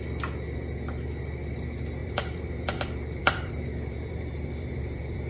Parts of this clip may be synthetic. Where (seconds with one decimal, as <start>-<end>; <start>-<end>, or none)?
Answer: 2.0-5.3